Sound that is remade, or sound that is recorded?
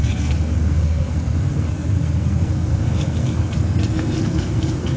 remade